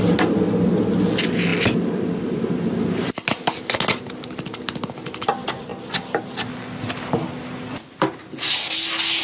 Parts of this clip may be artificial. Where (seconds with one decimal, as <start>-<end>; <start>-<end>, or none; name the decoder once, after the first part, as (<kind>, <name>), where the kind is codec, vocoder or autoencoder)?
none